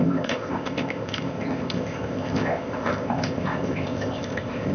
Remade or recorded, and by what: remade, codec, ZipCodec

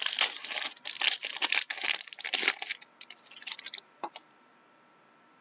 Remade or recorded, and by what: recorded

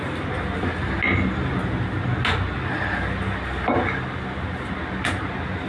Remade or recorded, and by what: recorded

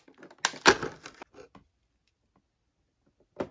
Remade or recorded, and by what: recorded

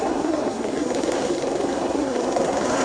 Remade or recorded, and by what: remade, codec, SNAC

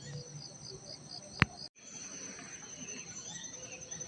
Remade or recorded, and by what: recorded